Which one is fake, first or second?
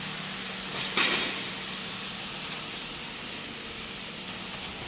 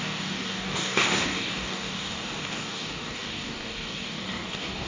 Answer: second